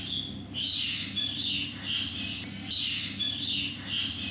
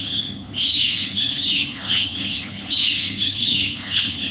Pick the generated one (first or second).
second